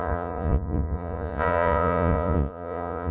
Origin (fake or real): fake